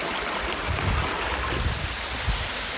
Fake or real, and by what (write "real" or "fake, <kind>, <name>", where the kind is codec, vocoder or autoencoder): real